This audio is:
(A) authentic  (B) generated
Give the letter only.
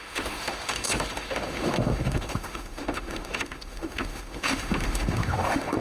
B